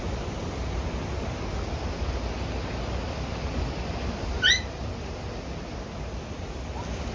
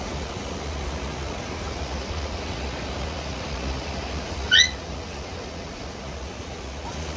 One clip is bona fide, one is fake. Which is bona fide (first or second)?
first